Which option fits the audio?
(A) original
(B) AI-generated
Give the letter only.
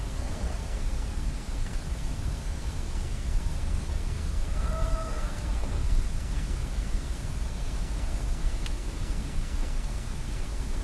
B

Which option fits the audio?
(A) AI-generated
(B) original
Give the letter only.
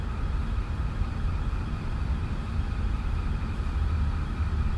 B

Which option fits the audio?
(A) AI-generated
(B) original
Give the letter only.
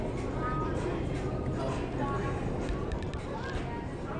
B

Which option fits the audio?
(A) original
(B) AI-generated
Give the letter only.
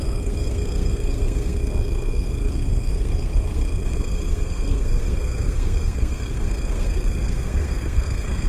B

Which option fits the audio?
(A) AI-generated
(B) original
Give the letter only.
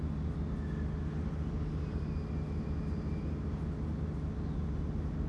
B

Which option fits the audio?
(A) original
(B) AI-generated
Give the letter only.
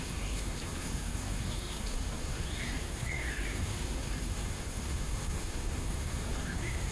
B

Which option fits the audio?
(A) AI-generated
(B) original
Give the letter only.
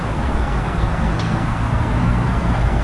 A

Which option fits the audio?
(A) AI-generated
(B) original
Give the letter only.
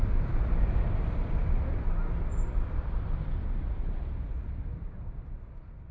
B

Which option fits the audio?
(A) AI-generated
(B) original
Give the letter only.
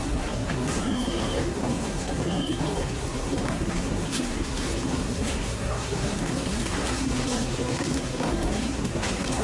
A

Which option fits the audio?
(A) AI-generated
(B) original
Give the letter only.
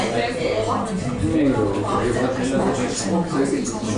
B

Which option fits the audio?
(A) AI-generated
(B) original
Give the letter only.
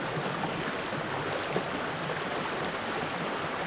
B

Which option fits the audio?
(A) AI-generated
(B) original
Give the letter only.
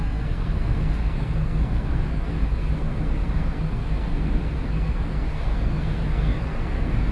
A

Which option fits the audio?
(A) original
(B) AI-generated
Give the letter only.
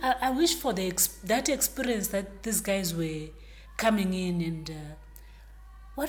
A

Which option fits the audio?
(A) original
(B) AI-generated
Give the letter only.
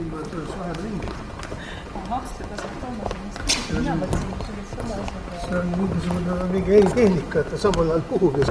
A